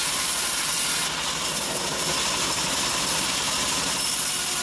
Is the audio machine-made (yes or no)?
no